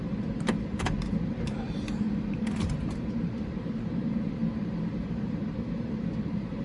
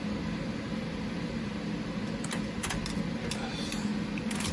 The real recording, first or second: second